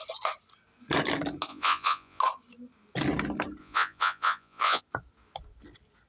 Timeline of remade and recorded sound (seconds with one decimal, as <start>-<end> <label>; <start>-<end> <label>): 0.0-1.5 recorded; 1.5-2.2 remade; 2.2-3.6 recorded; 3.6-4.8 remade; 4.8-6.1 recorded